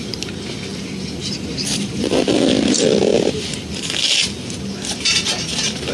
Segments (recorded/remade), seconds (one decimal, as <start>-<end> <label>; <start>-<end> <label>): 0.0-5.9 recorded

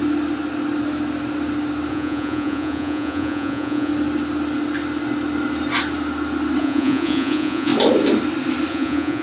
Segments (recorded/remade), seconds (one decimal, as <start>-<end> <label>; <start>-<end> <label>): 0.0-1.9 recorded; 1.9-3.9 remade; 3.9-6.6 recorded; 6.6-7.7 remade; 7.7-8.7 recorded; 8.7-9.2 remade

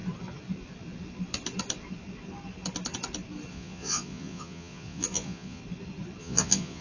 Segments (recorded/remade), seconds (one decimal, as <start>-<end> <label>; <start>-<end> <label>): 0.0-3.5 recorded; 3.5-5.6 remade; 5.6-6.2 recorded; 6.2-6.8 remade

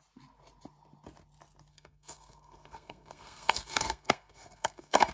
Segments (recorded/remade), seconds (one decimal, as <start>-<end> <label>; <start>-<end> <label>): 0.0-1.7 recorded; 1.7-5.1 remade